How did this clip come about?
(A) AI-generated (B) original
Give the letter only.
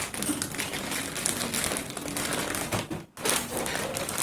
B